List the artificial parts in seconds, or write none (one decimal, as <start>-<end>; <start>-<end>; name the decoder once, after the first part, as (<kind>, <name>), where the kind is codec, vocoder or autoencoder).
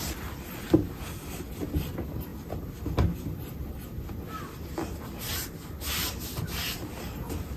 none